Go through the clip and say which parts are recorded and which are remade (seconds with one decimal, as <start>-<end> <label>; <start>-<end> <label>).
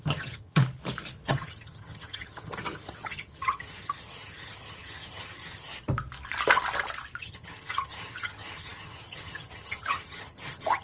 0.0-0.6 remade; 0.6-1.3 recorded; 1.3-5.7 remade; 5.7-7.2 recorded; 7.2-10.8 remade